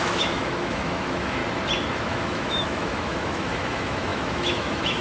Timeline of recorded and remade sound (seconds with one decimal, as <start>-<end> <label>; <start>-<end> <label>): 0.0-1.4 remade; 1.4-1.9 recorded; 1.9-5.0 remade